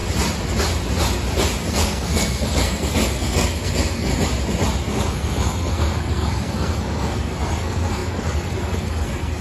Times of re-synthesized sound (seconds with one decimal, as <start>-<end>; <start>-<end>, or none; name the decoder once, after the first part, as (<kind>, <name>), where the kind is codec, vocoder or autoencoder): 1.7-4.1 (codec, SNAC); 4.9-9.4